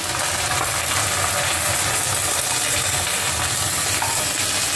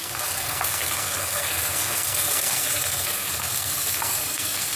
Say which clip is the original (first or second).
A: first